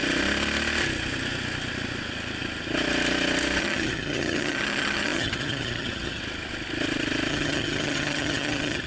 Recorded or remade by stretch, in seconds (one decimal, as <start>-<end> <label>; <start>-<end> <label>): 0.0-3.6 recorded; 3.6-6.2 remade; 6.2-7.3 recorded; 7.3-8.9 remade